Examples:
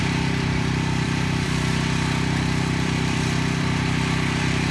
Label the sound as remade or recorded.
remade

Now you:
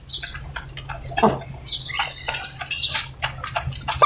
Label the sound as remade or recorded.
recorded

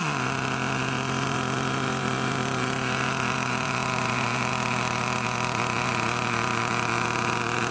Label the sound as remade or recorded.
remade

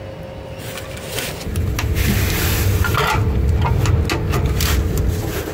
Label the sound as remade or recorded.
recorded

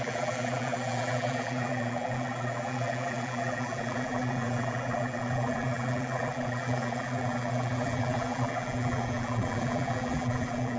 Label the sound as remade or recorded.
remade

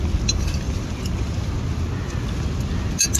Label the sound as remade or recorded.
recorded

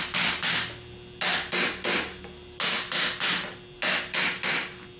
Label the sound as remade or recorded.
recorded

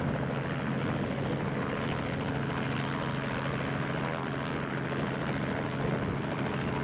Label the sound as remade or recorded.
recorded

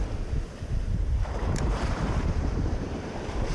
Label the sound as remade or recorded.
remade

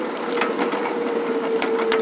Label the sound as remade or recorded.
recorded